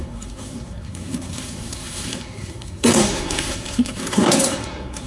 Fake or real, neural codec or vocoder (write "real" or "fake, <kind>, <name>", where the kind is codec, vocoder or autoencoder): fake, codec, SNAC